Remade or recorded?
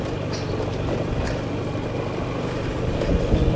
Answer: recorded